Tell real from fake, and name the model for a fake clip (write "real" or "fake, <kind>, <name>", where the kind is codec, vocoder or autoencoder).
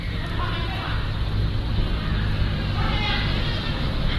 real